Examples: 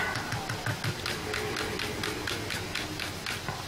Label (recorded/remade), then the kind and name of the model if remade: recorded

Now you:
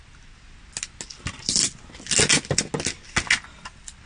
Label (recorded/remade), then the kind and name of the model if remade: recorded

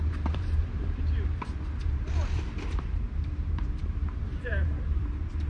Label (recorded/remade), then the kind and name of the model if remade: remade, vocoder, BigVGAN v2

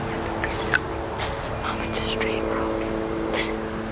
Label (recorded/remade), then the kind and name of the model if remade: recorded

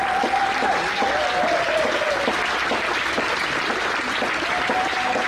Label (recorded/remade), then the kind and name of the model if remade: recorded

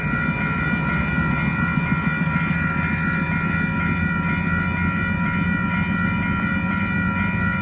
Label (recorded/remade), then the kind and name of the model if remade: recorded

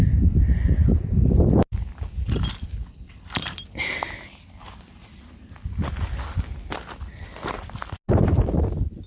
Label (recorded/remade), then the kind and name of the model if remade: recorded